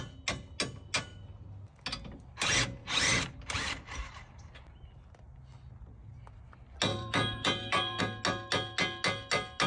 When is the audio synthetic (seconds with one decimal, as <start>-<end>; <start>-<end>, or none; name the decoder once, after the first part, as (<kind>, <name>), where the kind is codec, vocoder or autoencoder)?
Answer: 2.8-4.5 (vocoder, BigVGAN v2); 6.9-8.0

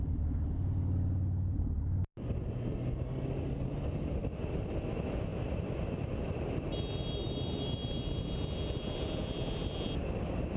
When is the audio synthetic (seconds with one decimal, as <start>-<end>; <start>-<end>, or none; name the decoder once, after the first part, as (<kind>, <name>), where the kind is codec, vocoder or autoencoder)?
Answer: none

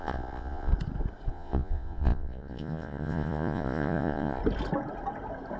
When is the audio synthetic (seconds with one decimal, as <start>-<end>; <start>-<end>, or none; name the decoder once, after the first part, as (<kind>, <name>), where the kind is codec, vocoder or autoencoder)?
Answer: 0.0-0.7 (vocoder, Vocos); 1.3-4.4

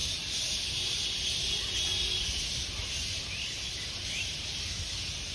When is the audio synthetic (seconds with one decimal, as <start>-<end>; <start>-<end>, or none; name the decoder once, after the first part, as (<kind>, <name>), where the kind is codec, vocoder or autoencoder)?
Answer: none

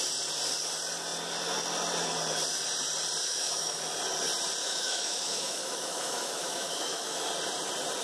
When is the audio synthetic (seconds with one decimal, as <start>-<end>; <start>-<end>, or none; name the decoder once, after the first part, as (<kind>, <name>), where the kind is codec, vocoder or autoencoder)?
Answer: 3.2-3.8 (autoencoder, DAC-VAE); 4.6-7.3